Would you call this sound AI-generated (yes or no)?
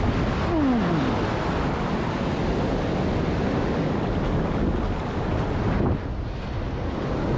no